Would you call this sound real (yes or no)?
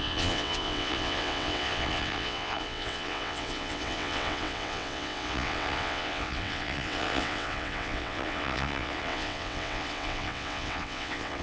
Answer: no